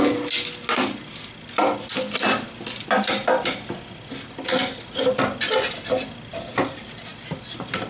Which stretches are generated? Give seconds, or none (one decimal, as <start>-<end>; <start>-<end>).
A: none